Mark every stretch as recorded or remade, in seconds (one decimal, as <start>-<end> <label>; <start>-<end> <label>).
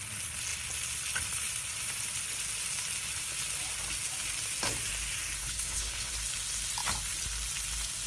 0.0-5.4 recorded; 5.4-6.1 remade; 6.1-8.1 recorded